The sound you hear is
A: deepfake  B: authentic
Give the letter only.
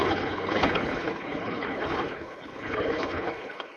A